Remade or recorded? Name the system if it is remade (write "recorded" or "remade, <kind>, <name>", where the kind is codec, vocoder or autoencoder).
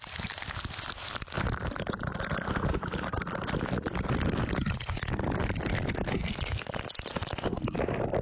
recorded